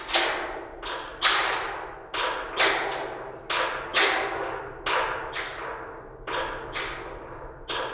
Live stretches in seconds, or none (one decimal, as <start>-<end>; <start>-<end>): 0.0-7.9